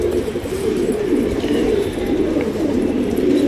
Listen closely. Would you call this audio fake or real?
fake